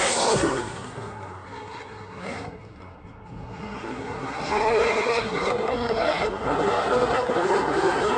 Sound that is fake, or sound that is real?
fake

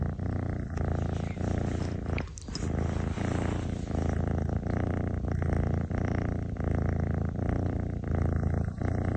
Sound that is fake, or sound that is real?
real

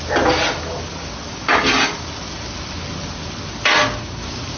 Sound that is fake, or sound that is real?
real